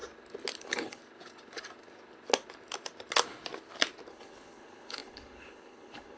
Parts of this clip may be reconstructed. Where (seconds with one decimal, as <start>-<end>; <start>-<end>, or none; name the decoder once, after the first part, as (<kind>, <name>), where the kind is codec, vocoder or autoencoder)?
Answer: 0.6-1.0 (codec, HILCodec); 4.1-6.2